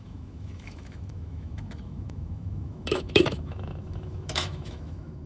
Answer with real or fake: fake